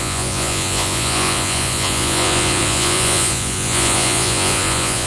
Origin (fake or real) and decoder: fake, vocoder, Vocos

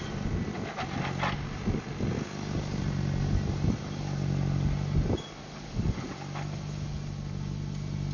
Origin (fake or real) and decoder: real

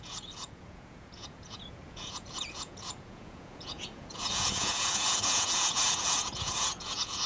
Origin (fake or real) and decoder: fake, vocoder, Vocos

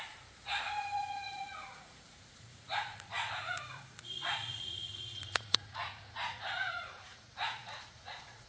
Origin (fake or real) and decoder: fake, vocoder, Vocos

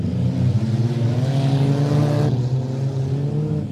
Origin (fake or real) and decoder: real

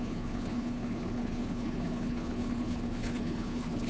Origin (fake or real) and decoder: fake, codec, HILCodec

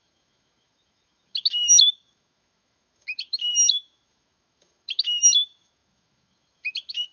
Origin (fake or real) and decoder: fake, autoencoder, DAC-VAE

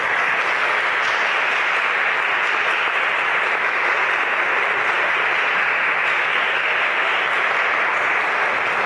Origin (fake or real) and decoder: real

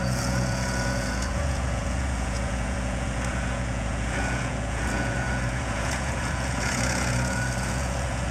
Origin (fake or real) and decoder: fake, vocoder, Vocos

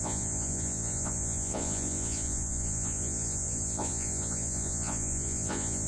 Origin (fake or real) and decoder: fake, vocoder, Vocos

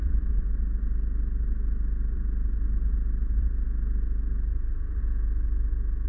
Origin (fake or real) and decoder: real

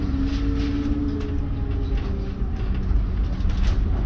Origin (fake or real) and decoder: real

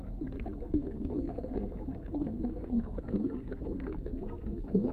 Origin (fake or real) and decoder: fake, codec, SNAC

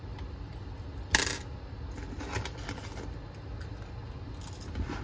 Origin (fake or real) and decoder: real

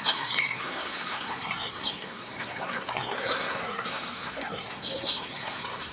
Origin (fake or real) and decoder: fake, codec, SNAC